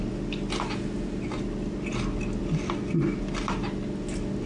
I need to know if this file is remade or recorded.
recorded